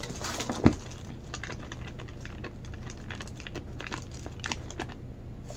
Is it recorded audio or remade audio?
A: recorded